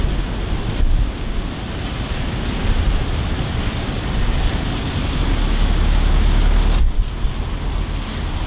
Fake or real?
real